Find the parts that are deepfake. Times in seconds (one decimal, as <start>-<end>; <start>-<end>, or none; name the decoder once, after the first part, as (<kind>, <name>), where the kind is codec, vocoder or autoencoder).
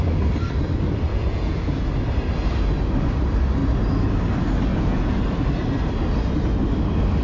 1.1-1.9 (vocoder, Vocos); 4.7-5.2